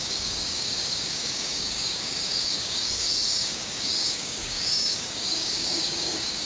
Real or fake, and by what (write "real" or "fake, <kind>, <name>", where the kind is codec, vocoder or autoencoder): fake, codec, DAC